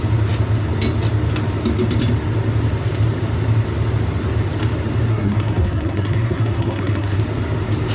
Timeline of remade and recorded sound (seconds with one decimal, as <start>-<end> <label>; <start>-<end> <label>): 0.0-5.1 recorded; 5.1-7.2 remade; 7.2-7.9 recorded